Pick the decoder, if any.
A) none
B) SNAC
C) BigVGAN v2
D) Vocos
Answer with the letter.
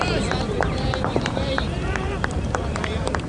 C